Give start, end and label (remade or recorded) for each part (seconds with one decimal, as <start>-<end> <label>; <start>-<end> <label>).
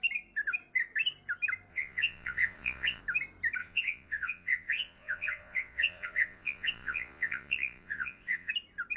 0.0-1.7 recorded; 1.7-3.0 remade; 3.0-3.6 recorded; 3.6-8.5 remade; 8.5-9.0 recorded